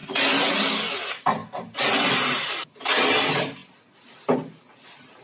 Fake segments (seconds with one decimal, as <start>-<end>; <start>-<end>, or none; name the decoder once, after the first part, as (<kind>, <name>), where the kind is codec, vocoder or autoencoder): none